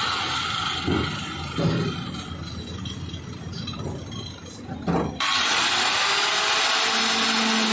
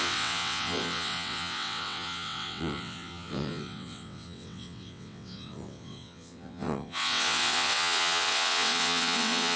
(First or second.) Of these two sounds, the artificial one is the second